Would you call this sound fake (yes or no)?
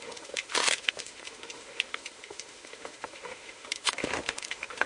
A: yes